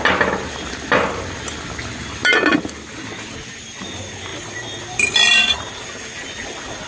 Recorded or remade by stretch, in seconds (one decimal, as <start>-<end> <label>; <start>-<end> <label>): 0.0-2.2 recorded; 2.2-3.3 remade; 3.3-4.3 recorded; 4.3-5.7 remade; 5.7-6.9 recorded